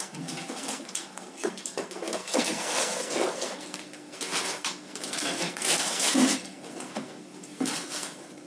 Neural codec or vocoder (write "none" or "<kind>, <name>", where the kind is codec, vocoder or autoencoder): codec, SNAC